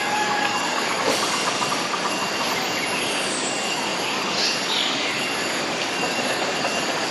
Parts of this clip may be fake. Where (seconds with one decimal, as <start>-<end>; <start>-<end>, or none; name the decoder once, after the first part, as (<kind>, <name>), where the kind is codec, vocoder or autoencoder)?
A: 0.0-2.2 (codec, DAC); 3.0-7.1